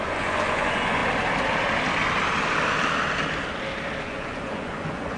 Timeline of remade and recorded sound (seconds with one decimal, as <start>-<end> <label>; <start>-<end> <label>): 0.0-1.0 remade; 1.0-4.0 recorded; 4.0-5.2 remade